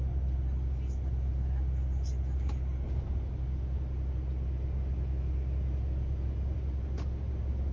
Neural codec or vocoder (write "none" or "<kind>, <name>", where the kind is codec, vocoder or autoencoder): none